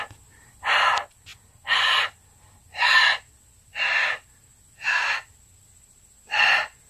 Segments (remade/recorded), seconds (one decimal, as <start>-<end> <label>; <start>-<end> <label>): 0.0-6.9 recorded

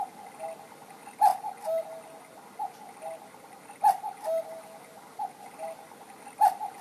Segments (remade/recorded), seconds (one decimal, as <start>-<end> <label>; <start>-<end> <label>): 0.0-6.8 recorded